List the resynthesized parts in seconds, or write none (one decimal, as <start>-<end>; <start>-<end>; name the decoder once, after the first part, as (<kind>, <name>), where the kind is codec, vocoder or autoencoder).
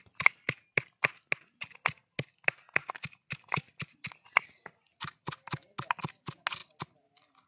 none